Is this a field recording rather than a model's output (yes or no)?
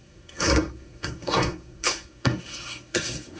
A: no